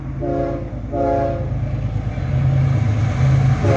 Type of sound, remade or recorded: recorded